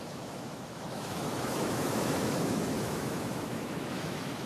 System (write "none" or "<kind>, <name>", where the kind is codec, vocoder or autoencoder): autoencoder, DAC-VAE